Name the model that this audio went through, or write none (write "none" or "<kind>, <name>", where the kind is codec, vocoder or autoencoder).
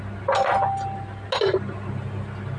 none